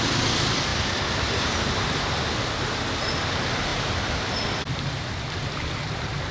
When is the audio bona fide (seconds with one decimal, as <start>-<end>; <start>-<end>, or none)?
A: 0.0-3.7; 5.8-6.3